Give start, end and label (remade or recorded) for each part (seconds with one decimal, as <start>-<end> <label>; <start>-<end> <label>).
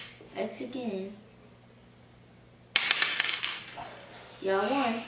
0.0-3.1 recorded; 3.1-3.6 remade; 3.6-5.1 recorded